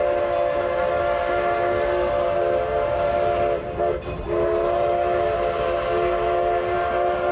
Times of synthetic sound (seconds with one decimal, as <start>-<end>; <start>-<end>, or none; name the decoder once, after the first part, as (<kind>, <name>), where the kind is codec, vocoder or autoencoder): none